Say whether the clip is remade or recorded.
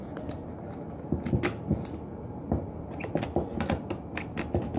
recorded